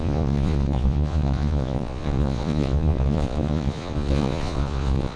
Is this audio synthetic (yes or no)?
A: yes